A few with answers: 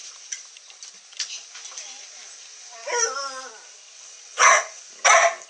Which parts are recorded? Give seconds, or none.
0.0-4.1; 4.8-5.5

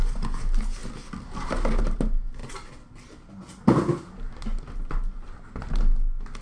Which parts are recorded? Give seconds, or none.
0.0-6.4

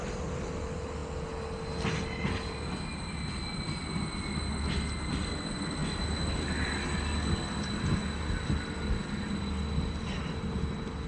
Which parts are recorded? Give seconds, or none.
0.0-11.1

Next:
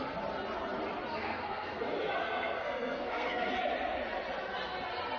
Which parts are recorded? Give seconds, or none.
0.0-1.1; 1.8-2.2; 3.5-5.2

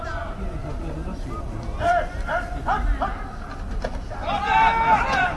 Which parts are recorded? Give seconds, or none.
0.0-5.4

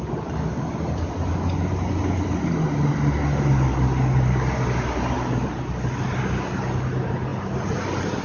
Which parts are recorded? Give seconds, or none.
0.0-8.2